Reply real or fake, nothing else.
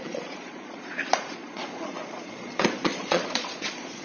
fake